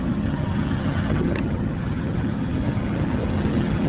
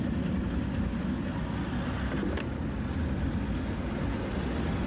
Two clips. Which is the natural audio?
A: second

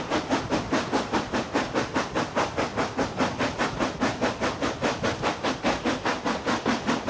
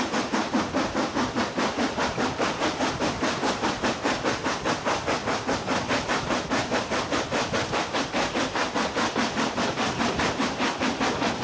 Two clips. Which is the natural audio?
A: first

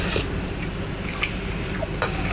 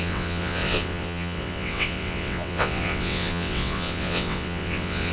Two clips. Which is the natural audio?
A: first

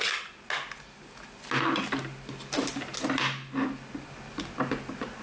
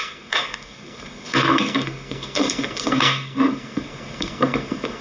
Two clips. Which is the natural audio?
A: first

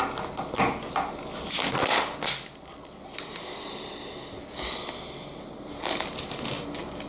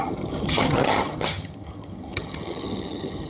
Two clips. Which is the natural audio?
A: first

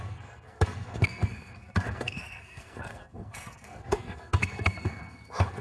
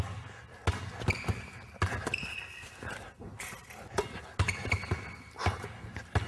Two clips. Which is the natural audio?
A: second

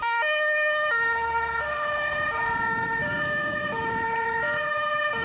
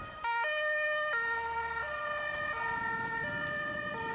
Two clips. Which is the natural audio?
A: second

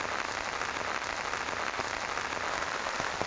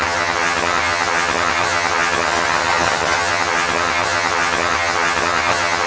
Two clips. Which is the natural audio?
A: first